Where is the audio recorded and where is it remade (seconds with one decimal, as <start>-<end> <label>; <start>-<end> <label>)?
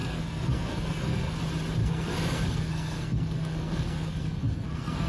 0.0-1.4 remade; 1.4-1.8 recorded; 1.8-5.1 remade